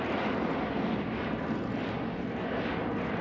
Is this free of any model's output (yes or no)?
yes